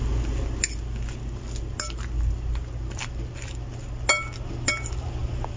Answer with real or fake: real